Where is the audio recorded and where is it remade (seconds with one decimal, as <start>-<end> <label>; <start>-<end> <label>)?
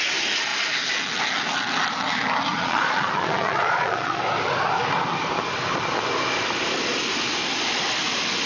0.0-2.5 recorded; 2.5-4.2 remade; 4.2-8.5 recorded